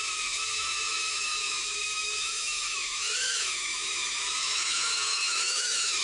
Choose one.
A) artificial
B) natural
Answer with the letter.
A